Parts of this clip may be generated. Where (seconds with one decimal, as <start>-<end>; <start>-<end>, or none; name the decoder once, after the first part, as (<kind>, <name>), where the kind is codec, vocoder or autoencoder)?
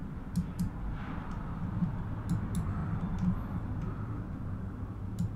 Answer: none